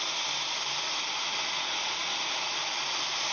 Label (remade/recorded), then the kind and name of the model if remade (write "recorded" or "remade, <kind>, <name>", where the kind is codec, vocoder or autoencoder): recorded